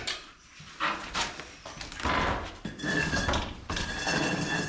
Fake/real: real